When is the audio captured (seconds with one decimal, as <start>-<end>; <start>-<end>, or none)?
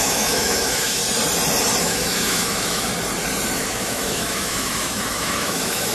1.0-1.8; 2.9-3.6